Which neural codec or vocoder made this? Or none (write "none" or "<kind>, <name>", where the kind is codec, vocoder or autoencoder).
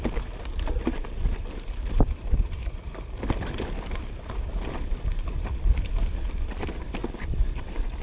none